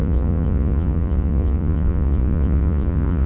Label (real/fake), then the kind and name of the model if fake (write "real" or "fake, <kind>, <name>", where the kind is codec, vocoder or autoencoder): fake, vocoder, Vocos